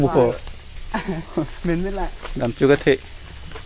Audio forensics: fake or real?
real